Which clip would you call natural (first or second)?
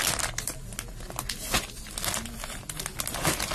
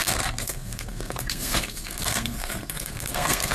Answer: first